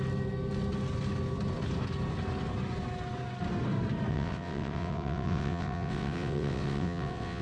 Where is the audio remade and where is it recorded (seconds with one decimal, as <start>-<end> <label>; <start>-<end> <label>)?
0.0-4.1 recorded; 4.1-7.4 remade